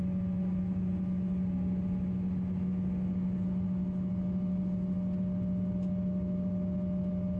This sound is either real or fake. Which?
real